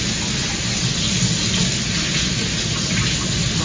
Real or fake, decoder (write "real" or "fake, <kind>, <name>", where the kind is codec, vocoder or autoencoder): real